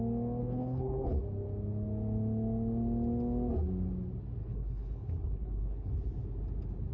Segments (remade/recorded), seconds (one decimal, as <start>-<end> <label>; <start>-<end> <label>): 0.0-0.4 recorded; 0.4-1.2 remade; 1.2-4.4 recorded; 4.4-5.9 remade; 5.9-6.9 recorded